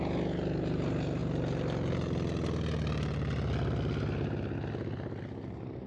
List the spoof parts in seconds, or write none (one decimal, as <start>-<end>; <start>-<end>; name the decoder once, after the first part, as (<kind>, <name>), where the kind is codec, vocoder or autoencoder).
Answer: none